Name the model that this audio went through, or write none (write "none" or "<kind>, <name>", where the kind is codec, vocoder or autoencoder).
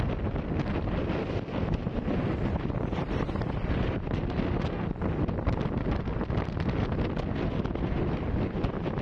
none